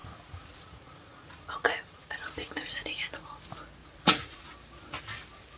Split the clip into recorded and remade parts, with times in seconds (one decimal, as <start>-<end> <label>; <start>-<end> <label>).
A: 0.0-3.4 remade; 3.4-3.8 recorded; 3.8-4.4 remade; 4.4-5.6 recorded